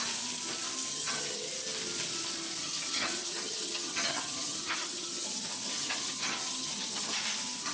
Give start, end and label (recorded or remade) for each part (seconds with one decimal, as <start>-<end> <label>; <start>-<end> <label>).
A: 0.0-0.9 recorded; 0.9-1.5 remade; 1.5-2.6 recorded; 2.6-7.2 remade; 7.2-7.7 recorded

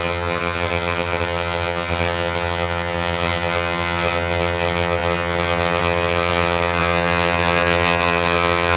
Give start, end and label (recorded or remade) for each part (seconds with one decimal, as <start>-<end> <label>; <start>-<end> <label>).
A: 0.0-8.8 remade

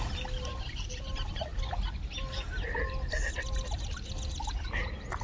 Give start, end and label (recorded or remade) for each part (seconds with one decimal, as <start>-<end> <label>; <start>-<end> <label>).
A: 0.0-5.2 recorded

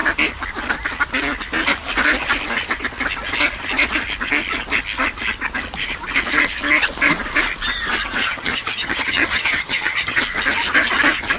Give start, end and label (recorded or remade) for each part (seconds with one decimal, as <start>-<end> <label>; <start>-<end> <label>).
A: 0.0-8.2 recorded; 8.2-10.2 remade; 10.2-11.4 recorded

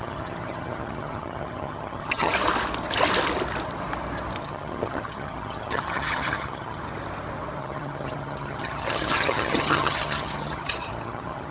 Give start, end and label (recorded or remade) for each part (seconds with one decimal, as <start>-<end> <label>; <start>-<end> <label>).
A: 0.0-2.3 remade; 2.3-4.4 recorded; 4.4-6.8 remade; 6.8-7.6 recorded; 7.6-11.5 remade

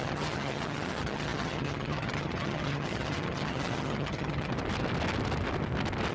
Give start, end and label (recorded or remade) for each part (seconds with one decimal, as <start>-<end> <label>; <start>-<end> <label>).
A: 0.0-4.5 remade; 4.5-6.1 recorded

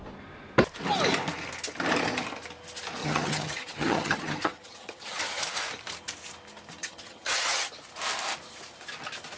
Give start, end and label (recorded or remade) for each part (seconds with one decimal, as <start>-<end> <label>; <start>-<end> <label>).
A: 0.0-3.0 recorded; 3.0-5.4 remade; 5.4-6.8 recorded; 6.8-7.7 remade; 7.7-9.4 recorded

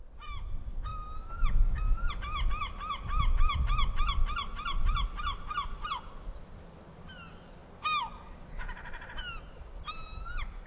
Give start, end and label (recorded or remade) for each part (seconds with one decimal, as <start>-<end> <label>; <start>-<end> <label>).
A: 0.0-10.7 recorded